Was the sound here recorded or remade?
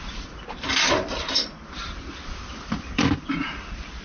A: remade